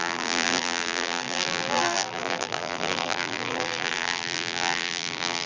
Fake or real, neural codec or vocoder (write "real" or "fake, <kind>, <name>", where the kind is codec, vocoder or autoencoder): fake, vocoder, BigVGAN v2